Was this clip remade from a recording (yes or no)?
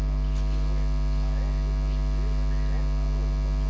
no